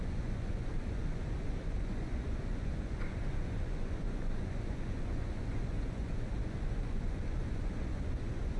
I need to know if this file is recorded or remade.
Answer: remade